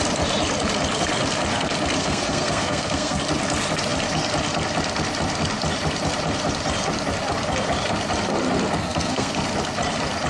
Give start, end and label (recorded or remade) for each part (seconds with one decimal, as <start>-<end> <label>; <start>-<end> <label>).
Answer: 0.0-2.0 recorded; 2.0-3.2 remade; 3.2-8.8 recorded; 8.8-9.3 remade; 9.3-10.3 recorded